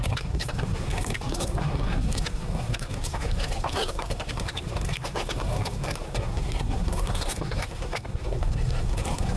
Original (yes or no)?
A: no